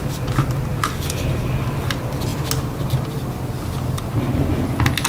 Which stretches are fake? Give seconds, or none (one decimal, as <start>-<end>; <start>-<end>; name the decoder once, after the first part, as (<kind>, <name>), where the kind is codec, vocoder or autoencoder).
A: none

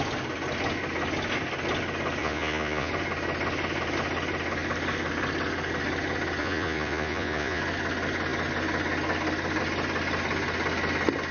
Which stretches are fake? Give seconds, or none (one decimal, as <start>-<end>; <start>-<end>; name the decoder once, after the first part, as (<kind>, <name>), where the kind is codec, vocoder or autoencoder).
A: 2.2-2.9 (vocoder, Vocos); 6.4-7.6

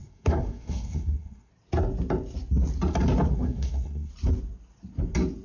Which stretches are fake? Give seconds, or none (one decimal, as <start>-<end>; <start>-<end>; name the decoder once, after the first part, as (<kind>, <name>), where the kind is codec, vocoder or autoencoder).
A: 0.0-1.5 (codec, SNAC); 3.3-4.1

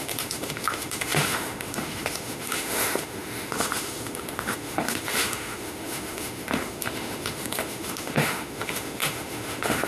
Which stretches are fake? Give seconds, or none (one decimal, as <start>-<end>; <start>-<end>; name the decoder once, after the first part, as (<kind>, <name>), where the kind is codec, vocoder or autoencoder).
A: 0.0-9.9 (autoencoder, DAC-VAE)

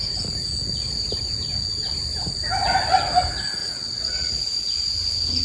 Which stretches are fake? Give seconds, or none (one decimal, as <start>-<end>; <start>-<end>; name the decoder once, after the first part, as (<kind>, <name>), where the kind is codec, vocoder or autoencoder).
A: 3.6-4.3 (vocoder, WaveNeXt)

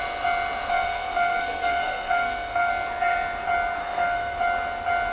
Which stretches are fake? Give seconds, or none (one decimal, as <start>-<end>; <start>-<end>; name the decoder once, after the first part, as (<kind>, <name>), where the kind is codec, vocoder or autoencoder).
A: 0.7-2.7 (codec, SNAC); 3.8-4.4

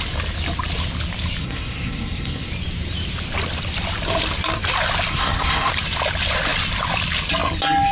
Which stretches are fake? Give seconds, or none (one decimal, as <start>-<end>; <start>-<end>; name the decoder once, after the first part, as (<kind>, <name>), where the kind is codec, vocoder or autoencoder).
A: 1.4-2.5 (codec, SNAC); 5.1-5.7

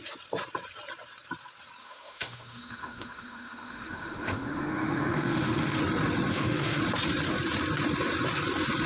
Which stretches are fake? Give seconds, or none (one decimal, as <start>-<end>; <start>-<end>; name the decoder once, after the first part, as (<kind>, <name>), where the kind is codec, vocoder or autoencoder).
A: 1.8-5.8 (autoencoder, DAC-VAE); 6.3-6.8